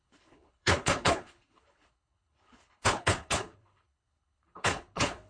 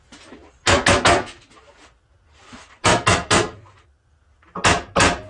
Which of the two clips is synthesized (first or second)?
first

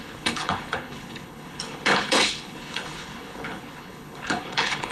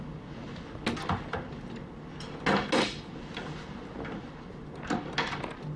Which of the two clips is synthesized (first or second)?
first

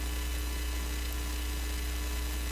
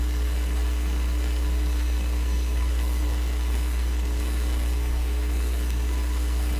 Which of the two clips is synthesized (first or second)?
second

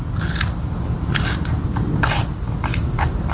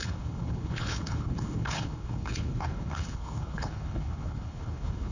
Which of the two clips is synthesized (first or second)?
second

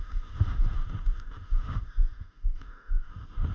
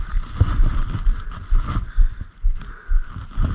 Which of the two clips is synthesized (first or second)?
first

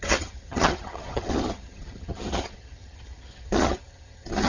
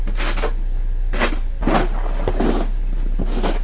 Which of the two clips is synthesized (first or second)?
first